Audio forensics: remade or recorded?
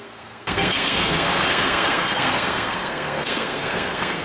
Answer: remade